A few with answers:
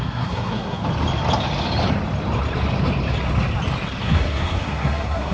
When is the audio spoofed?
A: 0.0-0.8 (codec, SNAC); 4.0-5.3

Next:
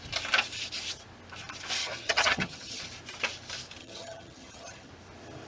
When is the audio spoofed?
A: 1.8-2.8 (vocoder, HiFi-GAN); 3.8-4.9

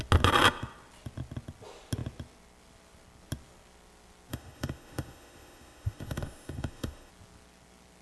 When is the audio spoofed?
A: 4.3-7.1 (autoencoder, DAC-VAE)

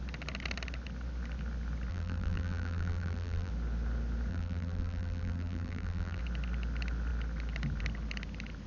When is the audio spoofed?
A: 1.9-3.5 (vocoder, BigVGAN v2); 4.3-6.2

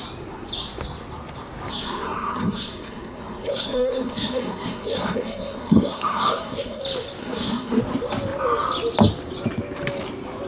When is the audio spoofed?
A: 1.7-6.8 (codec, SNAC); 7.2-7.8

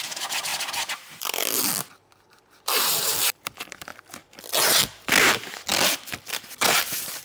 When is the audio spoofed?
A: 0.0-0.5 (vocoder, BigVGAN v2); 2.3-3.9; 5.2-7.2